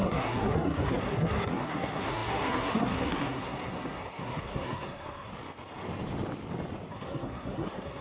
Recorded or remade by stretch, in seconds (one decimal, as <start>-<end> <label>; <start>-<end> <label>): 0.0-5.3 remade; 5.3-6.9 recorded; 6.9-8.0 remade